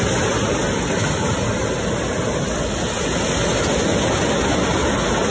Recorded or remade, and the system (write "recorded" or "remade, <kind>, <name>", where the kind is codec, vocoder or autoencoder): recorded